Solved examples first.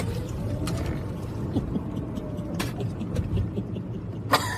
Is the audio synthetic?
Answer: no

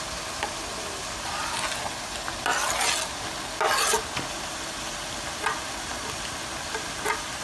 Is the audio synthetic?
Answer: no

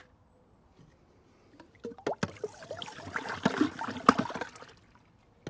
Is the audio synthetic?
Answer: no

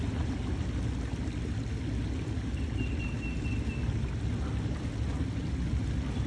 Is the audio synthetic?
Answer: no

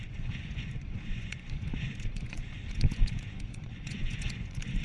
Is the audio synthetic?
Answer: yes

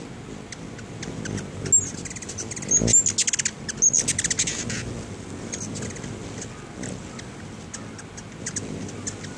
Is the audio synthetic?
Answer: no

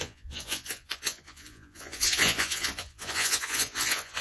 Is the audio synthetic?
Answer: yes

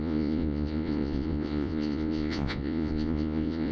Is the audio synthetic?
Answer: yes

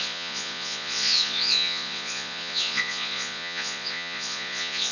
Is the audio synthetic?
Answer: yes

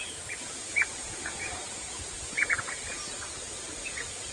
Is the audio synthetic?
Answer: yes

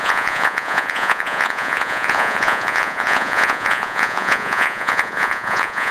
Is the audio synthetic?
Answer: yes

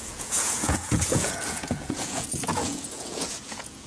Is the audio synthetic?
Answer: yes